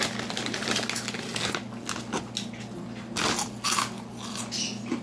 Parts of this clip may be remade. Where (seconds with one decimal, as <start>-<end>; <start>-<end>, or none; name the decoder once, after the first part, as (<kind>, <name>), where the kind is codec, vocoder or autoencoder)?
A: none